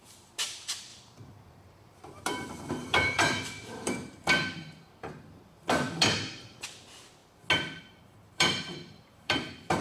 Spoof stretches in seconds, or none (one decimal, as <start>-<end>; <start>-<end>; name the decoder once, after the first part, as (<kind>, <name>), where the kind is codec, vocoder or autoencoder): 0.0-7.2 (vocoder, BigVGAN v2); 7.8-9.8